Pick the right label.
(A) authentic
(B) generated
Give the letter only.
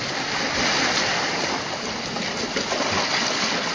A